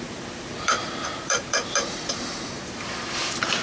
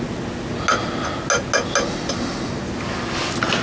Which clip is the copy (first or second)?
first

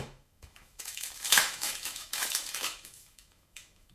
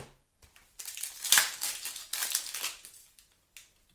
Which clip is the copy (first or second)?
first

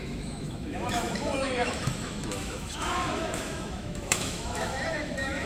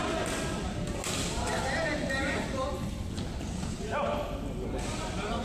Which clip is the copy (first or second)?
first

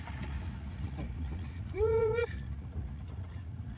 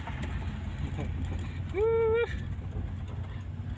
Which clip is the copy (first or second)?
first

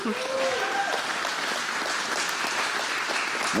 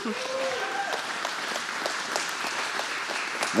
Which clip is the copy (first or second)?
second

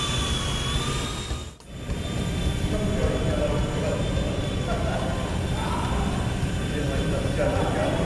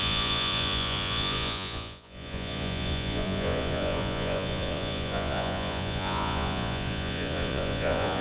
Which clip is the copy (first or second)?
second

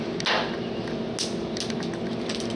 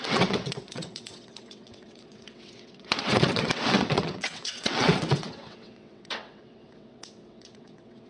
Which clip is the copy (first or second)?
second